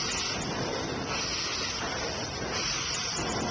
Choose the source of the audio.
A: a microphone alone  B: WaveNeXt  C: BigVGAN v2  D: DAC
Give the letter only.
A